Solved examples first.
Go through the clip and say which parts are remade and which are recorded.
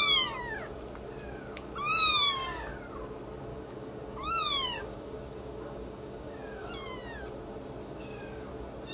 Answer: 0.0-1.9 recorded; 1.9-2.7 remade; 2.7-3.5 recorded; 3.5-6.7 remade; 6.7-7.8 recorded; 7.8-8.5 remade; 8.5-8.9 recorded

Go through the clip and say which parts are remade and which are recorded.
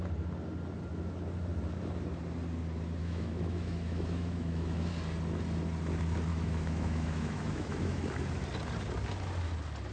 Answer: 0.0-3.0 recorded; 3.0-4.9 remade; 4.9-6.3 recorded; 6.3-8.0 remade; 8.0-9.9 recorded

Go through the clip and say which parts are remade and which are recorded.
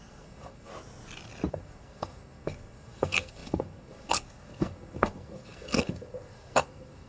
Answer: 0.0-0.7 remade; 0.7-1.5 recorded; 1.5-7.1 remade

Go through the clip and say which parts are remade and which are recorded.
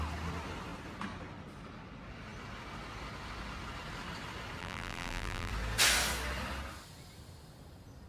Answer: 0.0-4.6 recorded; 4.6-5.5 remade; 5.5-8.1 recorded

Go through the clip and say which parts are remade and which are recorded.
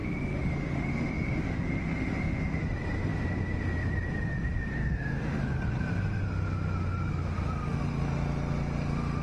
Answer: 0.0-2.6 remade; 2.6-4.7 recorded; 4.7-5.4 remade; 5.4-9.2 recorded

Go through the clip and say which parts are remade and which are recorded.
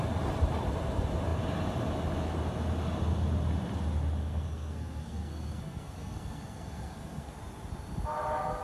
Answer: 0.0-4.2 recorded; 4.2-7.3 remade; 7.3-8.6 recorded